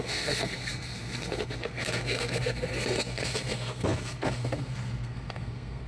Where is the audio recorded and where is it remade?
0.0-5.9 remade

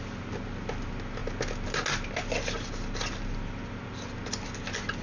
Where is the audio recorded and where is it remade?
0.0-5.0 recorded

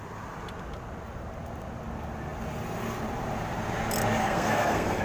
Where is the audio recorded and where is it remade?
0.0-4.2 recorded; 4.2-5.0 remade